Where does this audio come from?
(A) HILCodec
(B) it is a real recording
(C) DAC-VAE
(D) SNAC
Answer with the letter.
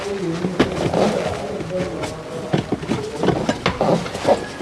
B